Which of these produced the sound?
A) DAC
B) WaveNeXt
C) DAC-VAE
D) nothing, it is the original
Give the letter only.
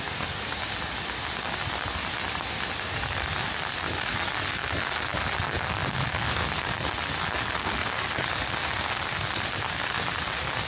D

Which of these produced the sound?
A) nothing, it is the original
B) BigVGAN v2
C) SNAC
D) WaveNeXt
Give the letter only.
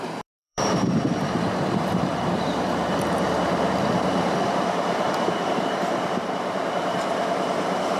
B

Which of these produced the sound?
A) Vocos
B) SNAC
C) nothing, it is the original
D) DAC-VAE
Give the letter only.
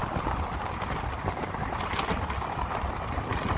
C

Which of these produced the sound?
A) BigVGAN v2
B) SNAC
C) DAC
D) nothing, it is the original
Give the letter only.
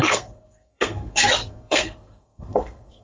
B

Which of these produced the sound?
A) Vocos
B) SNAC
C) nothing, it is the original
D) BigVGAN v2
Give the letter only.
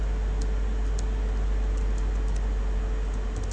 C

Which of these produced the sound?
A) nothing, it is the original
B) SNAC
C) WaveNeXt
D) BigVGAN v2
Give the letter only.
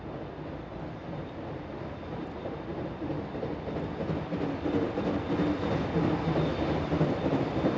A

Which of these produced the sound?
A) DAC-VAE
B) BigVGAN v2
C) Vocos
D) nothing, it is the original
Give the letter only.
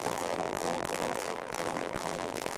B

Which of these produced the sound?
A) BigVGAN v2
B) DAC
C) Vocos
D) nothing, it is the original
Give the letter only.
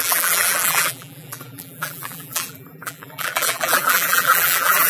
A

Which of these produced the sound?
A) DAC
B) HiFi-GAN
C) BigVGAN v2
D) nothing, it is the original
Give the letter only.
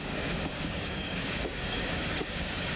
A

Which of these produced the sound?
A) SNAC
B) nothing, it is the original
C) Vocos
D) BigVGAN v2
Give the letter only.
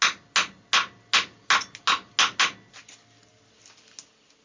B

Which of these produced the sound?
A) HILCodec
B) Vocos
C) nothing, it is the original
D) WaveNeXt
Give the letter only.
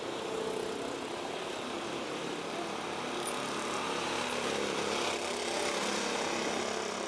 C